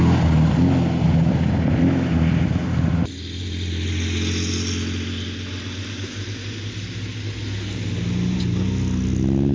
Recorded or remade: recorded